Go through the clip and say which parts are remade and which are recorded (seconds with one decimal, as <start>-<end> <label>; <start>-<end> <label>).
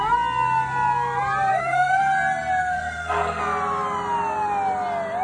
0.0-1.5 recorded; 1.5-2.0 remade; 2.0-2.6 recorded; 2.6-3.4 remade; 3.4-5.2 recorded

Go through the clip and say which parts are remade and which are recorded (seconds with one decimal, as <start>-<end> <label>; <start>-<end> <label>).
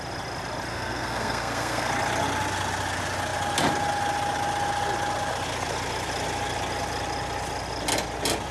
0.0-0.7 recorded; 0.7-1.9 remade; 1.9-8.5 recorded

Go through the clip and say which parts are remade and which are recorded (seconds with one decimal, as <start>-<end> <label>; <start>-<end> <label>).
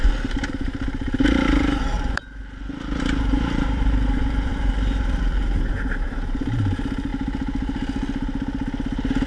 0.0-0.5 recorded; 0.5-2.4 remade; 2.4-3.0 recorded; 3.0-7.1 remade; 7.1-9.3 recorded